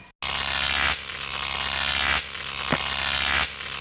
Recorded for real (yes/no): yes